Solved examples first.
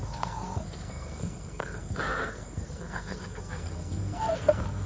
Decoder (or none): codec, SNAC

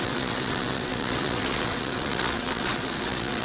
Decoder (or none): vocoder, WaveNeXt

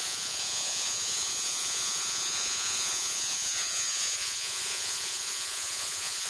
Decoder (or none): vocoder, Vocos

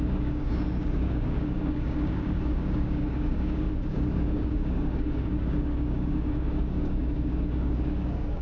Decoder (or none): codec, DAC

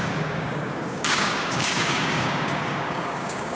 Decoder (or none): codec, DAC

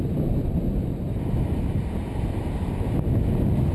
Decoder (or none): none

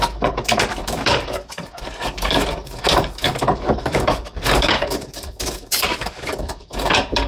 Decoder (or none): codec, DAC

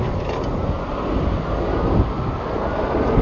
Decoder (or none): none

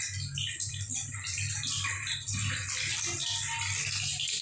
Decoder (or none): none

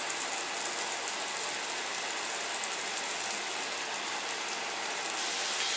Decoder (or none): none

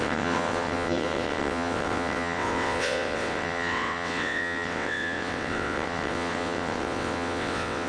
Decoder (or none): vocoder, WaveNeXt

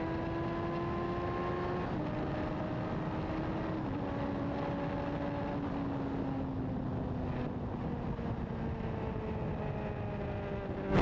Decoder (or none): none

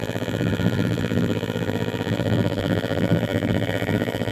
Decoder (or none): vocoder, BigVGAN v2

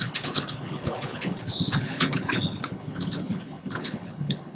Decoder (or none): codec, HILCodec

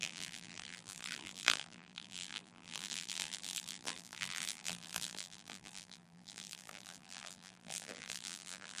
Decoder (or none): vocoder, BigVGAN v2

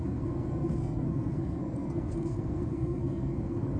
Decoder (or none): codec, SNAC